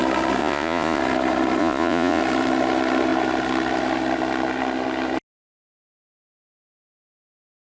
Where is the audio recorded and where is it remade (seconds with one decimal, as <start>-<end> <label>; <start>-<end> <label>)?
0.0-0.4 recorded; 0.4-1.0 remade; 1.0-1.6 recorded; 1.6-2.2 remade; 2.2-7.8 recorded